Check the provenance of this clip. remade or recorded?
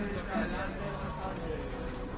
remade